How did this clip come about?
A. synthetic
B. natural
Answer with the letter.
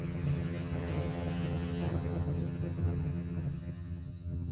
A